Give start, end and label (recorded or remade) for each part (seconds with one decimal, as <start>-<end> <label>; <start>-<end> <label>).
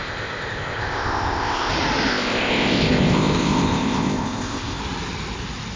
0.0-1.7 remade; 1.7-2.1 recorded; 2.1-4.8 remade; 4.8-5.8 recorded